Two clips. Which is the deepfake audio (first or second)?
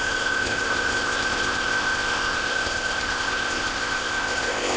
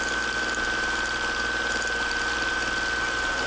first